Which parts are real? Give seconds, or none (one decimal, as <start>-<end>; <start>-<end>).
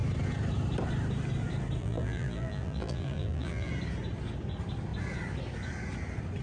0.0-1.8; 3.7-6.4